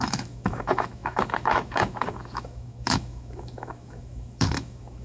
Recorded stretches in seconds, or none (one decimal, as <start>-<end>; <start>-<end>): none